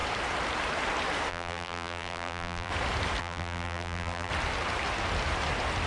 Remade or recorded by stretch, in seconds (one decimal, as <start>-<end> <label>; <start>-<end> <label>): 0.0-1.3 recorded; 1.3-2.7 remade; 2.7-3.2 recorded; 3.2-4.3 remade; 4.3-5.9 recorded